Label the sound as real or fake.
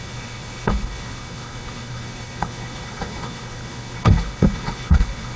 fake